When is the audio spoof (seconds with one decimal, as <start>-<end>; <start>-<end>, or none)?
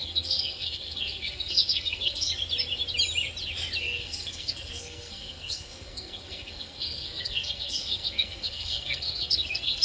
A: 0.0-2.3; 3.8-9.8